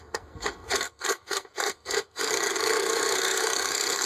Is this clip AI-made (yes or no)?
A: yes